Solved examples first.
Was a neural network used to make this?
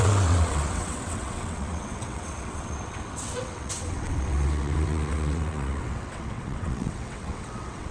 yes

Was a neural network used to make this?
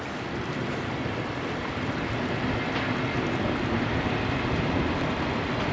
no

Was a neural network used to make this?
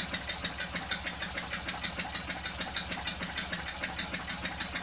no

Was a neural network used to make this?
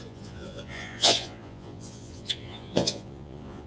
yes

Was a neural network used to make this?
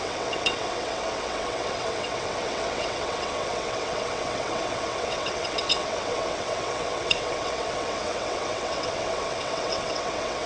yes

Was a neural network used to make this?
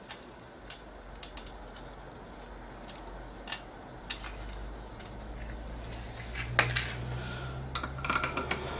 no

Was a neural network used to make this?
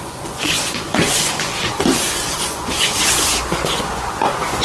yes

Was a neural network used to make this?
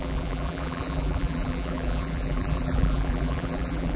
yes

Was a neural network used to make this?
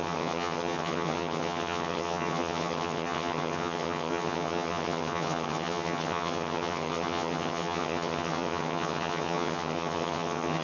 yes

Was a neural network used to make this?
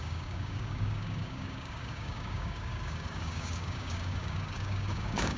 yes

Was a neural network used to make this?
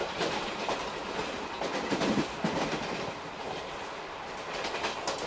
no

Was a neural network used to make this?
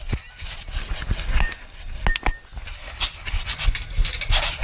no